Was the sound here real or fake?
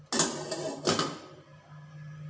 real